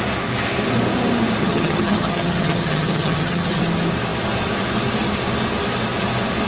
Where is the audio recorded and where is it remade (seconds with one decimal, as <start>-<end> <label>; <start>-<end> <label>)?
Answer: 0.0-1.4 recorded; 1.4-3.6 remade; 3.6-6.5 recorded